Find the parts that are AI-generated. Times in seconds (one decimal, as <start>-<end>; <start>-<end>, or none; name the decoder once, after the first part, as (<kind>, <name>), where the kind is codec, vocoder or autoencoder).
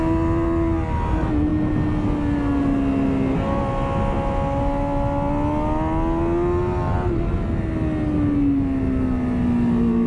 none